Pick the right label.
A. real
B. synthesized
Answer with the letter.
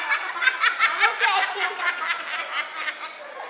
A